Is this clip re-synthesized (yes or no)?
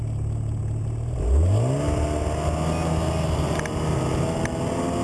no